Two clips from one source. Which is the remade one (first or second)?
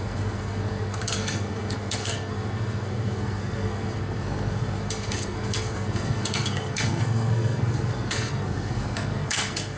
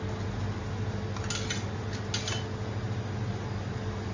first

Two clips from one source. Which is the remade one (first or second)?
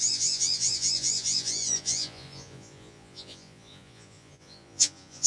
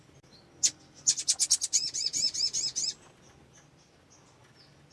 first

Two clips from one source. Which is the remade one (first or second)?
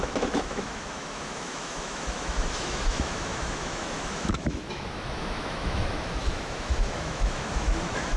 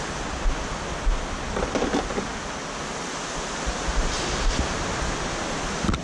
first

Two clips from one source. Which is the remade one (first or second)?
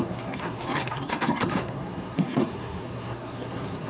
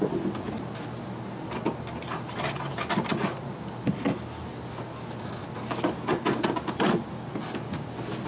first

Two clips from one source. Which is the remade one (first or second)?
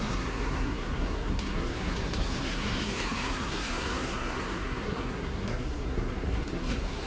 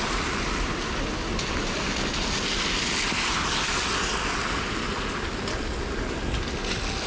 first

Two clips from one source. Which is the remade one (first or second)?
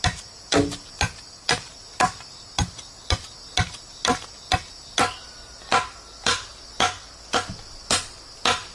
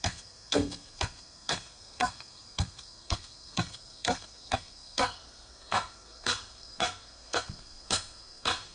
second